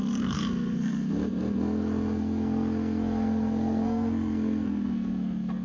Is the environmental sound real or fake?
fake